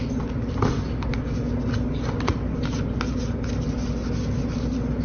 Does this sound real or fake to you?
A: real